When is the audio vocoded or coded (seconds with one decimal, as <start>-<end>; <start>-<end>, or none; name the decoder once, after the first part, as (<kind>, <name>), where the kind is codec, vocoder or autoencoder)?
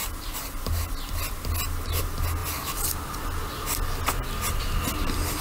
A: none